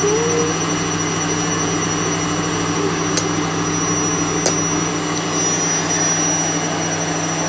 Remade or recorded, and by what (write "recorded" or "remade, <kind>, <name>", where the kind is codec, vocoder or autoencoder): recorded